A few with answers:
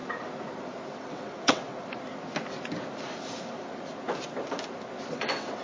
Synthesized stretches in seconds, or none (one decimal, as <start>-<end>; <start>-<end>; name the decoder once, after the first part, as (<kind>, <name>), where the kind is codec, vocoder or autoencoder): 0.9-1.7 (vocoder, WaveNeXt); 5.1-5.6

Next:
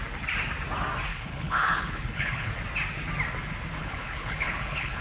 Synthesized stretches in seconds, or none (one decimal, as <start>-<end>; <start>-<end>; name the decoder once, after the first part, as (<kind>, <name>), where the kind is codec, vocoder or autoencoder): 1.1-2.5 (codec, HILCodec); 3.8-5.0

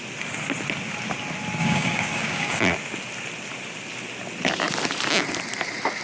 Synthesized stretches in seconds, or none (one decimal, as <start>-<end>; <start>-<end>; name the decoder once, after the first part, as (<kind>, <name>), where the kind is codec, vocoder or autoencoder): 1.6-2.6 (codec, DAC)